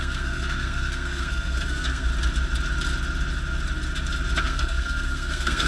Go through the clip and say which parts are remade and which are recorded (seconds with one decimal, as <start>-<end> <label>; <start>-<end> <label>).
0.0-2.1 remade; 2.1-4.4 recorded; 4.4-5.7 remade